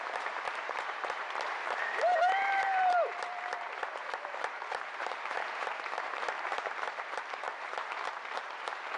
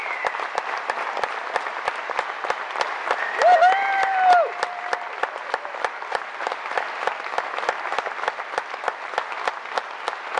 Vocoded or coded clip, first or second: first